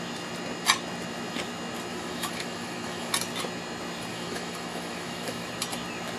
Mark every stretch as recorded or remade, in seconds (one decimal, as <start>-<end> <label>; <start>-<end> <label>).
0.0-1.9 recorded; 1.9-3.1 remade; 3.1-4.1 recorded; 4.1-5.5 remade; 5.5-6.2 recorded